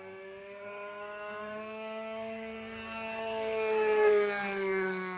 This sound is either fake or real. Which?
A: fake